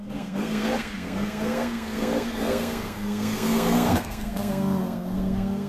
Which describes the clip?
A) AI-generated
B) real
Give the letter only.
A